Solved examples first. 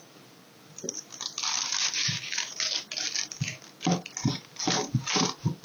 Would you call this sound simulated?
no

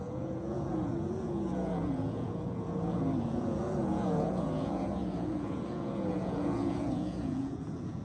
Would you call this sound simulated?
yes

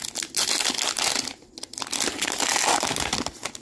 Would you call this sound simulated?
no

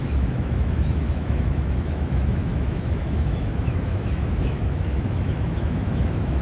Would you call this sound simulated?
yes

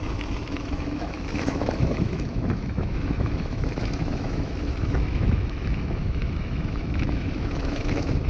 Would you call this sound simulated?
yes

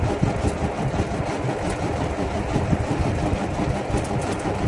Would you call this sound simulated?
no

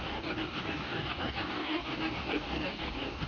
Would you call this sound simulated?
yes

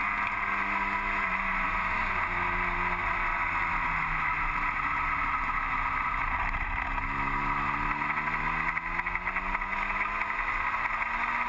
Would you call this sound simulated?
no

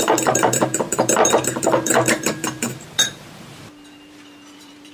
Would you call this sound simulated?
yes